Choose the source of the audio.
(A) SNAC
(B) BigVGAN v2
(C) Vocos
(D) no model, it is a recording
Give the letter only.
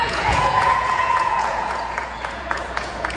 C